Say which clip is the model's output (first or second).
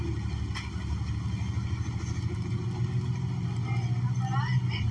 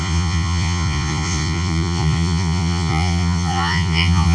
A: second